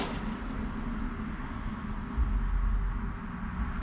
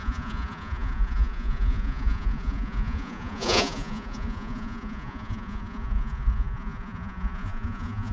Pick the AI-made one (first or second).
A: second